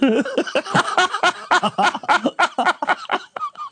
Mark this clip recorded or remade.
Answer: recorded